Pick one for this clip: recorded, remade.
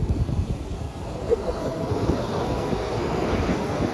remade